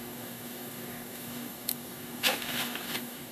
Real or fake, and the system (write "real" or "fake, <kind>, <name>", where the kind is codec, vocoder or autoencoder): fake, codec, DAC